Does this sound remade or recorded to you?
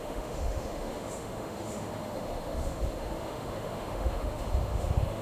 remade